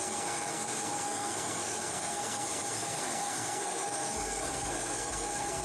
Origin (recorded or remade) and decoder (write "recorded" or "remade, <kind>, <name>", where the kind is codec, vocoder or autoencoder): remade, codec, SNAC